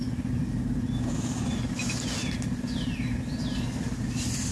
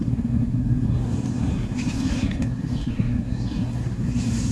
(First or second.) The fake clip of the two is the second